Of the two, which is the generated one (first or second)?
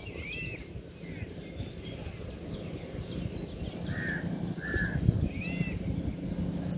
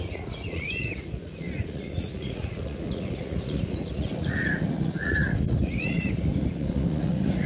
second